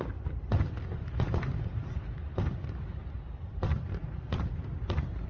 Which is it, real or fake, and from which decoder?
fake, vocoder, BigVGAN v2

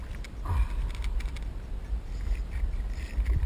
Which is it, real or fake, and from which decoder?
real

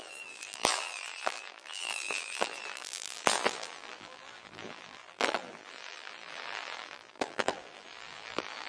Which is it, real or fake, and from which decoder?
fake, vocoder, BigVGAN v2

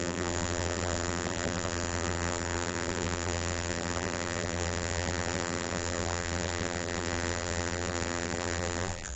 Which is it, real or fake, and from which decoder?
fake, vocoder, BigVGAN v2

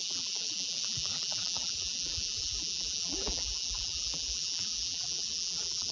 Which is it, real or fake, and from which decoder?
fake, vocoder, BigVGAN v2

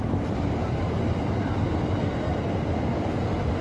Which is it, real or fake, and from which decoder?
fake, vocoder, BigVGAN v2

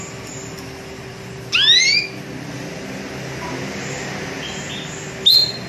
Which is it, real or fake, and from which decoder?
real